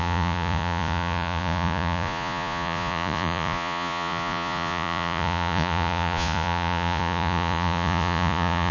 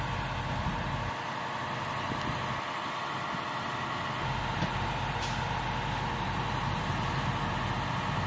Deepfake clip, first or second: first